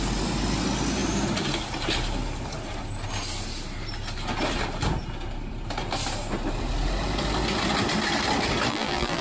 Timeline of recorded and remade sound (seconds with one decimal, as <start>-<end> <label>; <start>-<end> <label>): 0.0-8.7 recorded; 8.7-9.2 remade